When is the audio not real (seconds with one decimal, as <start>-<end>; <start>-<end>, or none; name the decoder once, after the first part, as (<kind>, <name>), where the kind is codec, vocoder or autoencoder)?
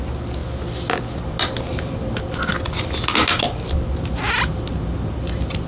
none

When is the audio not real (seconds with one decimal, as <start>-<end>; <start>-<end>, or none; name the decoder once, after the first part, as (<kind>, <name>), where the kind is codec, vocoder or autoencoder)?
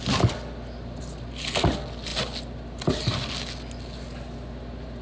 none